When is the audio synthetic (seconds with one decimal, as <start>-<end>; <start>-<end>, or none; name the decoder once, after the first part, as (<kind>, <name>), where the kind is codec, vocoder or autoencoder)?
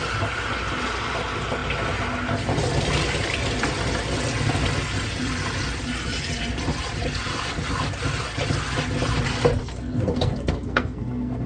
9.6-11.5 (codec, SNAC)